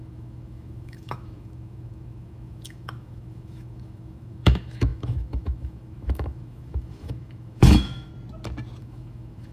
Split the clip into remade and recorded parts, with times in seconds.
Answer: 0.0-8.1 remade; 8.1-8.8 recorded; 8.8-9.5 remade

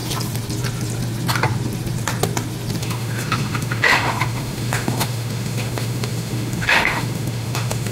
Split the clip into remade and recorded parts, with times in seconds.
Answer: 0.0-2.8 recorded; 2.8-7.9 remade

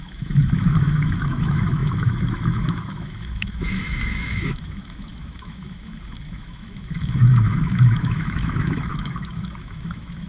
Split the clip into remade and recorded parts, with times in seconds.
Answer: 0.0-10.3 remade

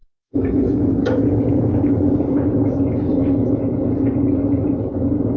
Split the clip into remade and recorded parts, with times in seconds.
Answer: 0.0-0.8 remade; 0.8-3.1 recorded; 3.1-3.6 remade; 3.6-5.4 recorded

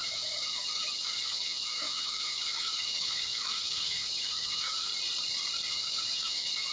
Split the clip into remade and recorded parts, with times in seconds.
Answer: 0.0-4.9 remade; 4.9-5.7 recorded; 5.7-6.7 remade

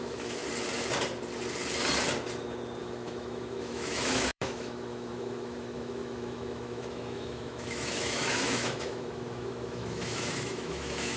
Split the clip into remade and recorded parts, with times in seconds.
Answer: 0.0-0.4 remade; 0.4-2.8 recorded; 2.8-11.2 remade